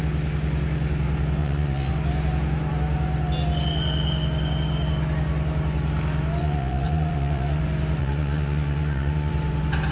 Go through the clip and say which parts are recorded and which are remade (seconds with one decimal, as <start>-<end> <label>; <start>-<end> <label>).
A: 0.0-1.4 recorded; 1.4-1.9 remade; 1.9-6.4 recorded; 6.4-7.6 remade; 7.6-8.0 recorded; 8.0-9.3 remade; 9.3-9.9 recorded